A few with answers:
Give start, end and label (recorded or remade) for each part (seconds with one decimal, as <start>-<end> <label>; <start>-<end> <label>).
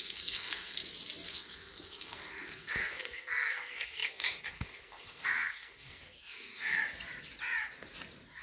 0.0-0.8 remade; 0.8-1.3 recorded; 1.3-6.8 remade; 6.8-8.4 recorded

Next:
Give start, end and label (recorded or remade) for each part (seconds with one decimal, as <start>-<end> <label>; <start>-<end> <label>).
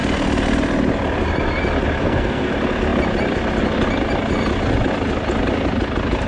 0.0-2.0 recorded; 2.0-2.5 remade; 2.5-6.3 recorded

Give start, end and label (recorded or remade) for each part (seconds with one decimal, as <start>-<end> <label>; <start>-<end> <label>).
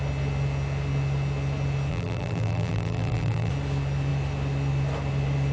0.0-1.9 recorded; 1.9-3.5 remade; 3.5-5.5 recorded